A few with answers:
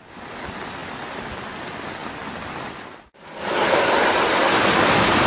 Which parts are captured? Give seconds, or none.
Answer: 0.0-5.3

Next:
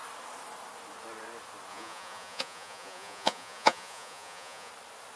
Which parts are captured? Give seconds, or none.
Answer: 0.0-1.7; 4.7-5.2